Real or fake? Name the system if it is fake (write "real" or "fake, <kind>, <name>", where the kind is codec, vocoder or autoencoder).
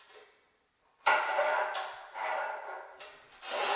real